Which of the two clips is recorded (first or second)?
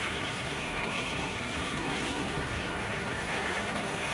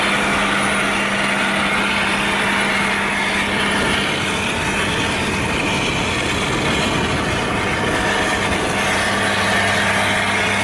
second